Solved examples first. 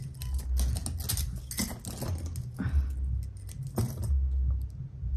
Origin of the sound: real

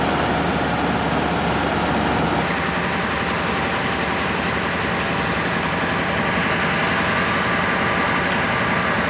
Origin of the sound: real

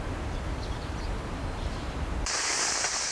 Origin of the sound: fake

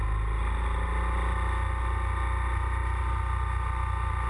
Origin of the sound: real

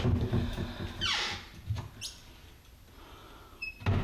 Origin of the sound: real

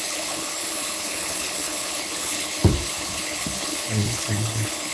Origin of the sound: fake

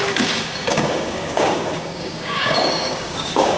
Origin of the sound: fake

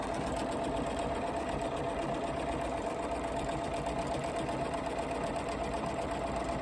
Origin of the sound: real